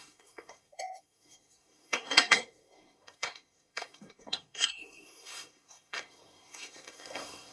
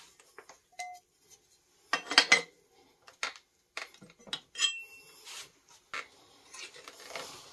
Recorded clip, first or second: second